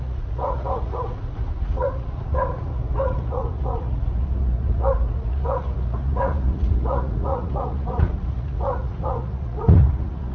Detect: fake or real fake